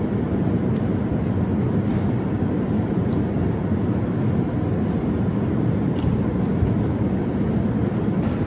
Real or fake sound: real